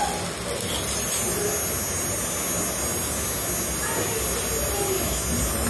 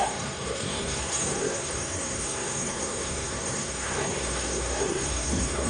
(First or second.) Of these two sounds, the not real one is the second